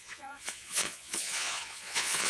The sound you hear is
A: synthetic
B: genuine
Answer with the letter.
A